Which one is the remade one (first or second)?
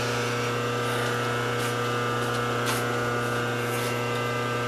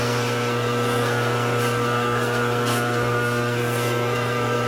second